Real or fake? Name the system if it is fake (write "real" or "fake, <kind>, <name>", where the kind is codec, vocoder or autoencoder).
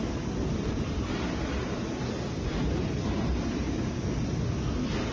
real